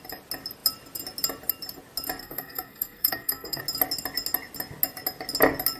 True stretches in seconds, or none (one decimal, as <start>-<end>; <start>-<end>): 0.0-2.2; 3.6-5.8

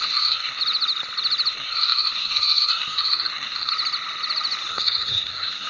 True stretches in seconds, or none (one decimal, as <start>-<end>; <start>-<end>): 0.6-1.5; 3.7-4.7

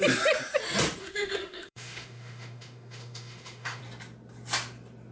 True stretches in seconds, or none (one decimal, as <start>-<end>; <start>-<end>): 0.0-1.0; 3.8-5.1